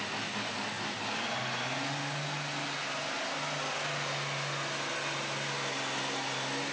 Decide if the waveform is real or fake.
real